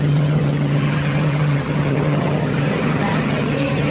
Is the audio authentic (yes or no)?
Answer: no